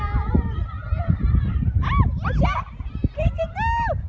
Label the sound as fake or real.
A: real